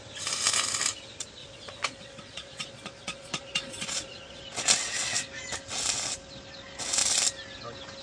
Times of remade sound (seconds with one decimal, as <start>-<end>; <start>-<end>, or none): 1.4-4.4